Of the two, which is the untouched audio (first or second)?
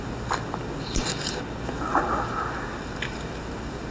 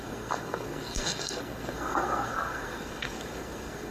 first